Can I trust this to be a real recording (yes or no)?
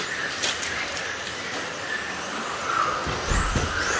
yes